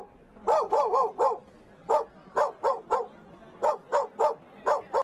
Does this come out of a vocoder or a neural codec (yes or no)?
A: no